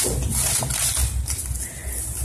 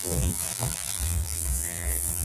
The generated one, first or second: second